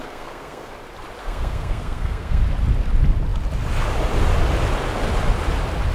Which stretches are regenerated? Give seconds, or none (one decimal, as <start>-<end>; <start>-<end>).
0.0-0.7; 1.2-2.4